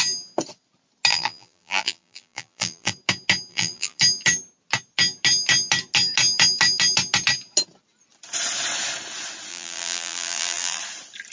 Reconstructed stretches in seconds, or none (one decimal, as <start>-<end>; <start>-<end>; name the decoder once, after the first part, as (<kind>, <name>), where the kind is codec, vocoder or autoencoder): 1.1-2.9 (vocoder, BigVGAN v2); 3.5-4.0; 9.5-10.8